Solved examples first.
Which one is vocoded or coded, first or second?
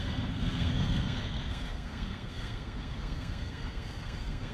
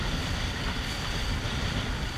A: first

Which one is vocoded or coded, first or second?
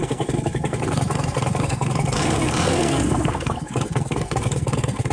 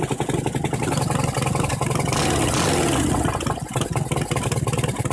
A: first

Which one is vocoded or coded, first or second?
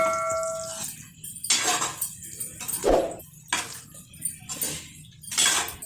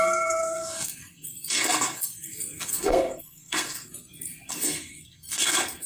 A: second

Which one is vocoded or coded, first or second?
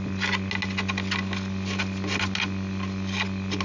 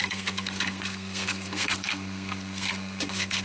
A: second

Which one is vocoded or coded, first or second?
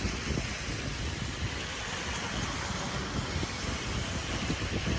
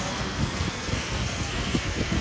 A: second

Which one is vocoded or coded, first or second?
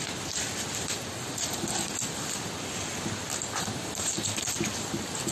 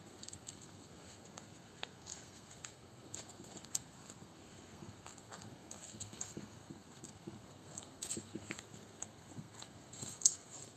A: second